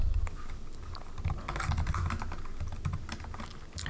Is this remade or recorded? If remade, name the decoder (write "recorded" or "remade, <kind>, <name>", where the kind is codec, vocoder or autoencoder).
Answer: recorded